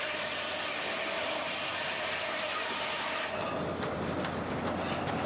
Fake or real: real